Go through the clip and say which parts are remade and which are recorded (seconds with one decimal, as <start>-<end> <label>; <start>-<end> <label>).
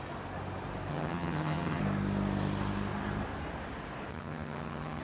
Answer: 0.0-0.9 recorded; 0.9-1.8 remade; 1.8-4.1 recorded; 4.1-5.0 remade